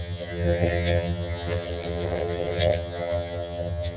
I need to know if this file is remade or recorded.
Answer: remade